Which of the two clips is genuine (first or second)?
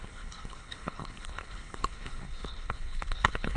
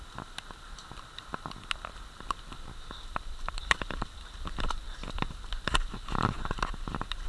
second